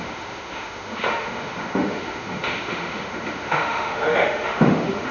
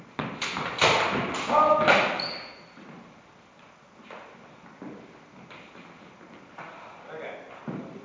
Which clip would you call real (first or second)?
second